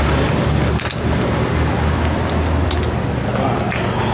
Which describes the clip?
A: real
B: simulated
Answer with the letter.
A